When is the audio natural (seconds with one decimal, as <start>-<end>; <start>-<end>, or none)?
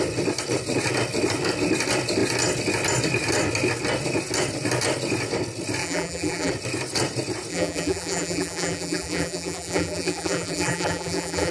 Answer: 0.0-5.8; 6.5-7.5